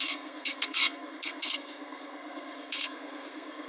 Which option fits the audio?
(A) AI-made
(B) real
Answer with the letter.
A